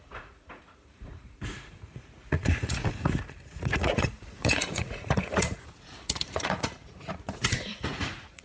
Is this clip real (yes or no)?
no